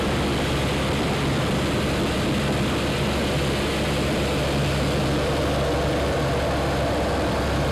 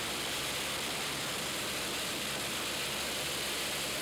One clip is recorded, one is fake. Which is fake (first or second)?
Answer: second